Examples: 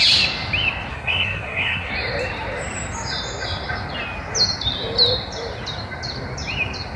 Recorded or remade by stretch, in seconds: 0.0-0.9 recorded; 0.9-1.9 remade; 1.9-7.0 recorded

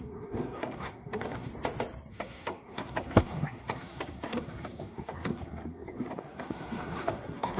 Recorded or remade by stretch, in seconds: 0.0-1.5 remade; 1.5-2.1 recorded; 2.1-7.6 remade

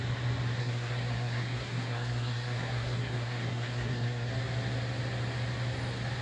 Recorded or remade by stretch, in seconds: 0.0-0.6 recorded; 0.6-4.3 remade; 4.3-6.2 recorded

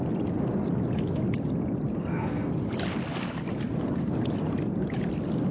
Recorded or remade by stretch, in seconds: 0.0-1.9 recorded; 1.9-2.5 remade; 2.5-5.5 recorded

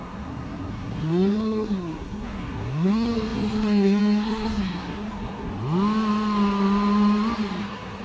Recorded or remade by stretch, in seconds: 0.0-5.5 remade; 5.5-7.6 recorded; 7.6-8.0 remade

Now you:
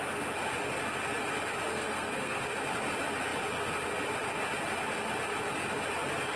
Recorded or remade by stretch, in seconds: 0.0-1.7 recorded; 1.7-2.4 remade; 2.4-6.4 recorded